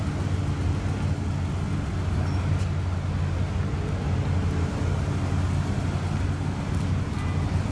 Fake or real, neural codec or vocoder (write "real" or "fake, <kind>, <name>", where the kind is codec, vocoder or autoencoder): real